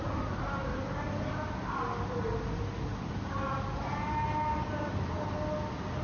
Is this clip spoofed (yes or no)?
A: no